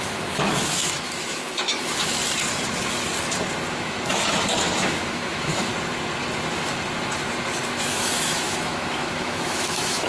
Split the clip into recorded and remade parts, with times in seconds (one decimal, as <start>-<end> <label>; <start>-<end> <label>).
0.0-2.2 remade; 2.2-3.7 recorded; 3.7-5.7 remade; 5.7-7.7 recorded; 7.7-10.1 remade